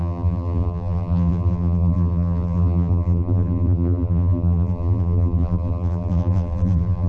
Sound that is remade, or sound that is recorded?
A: remade